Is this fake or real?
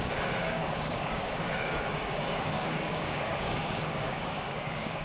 fake